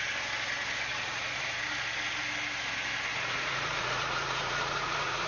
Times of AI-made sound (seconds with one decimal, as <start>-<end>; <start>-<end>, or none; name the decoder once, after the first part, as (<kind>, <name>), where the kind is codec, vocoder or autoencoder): 0.9-1.6 (vocoder, Vocos); 3.1-5.3